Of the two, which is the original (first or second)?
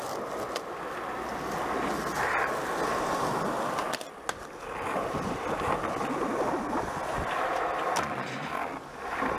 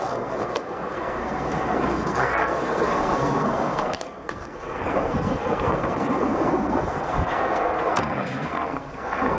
first